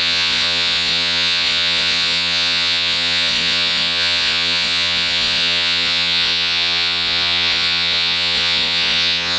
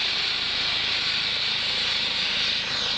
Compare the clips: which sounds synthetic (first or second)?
first